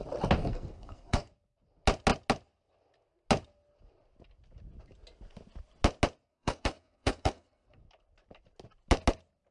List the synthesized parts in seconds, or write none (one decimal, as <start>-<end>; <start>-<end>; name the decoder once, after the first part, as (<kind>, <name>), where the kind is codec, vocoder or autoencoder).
0.4-1.3 (codec, SNAC); 6.3-7.8